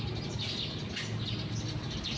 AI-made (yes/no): no